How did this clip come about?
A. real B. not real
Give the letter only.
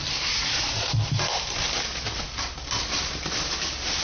A